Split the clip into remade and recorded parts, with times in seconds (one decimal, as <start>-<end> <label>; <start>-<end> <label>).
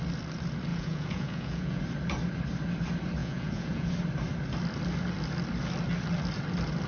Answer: 0.0-0.7 recorded; 0.7-1.8 remade; 1.8-3.2 recorded; 3.2-3.9 remade; 3.9-6.9 recorded